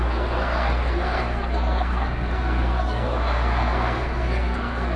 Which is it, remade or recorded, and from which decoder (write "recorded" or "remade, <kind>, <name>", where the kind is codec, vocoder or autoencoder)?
remade, codec, SNAC